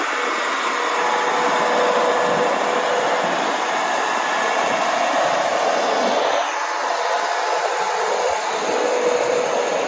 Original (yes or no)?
yes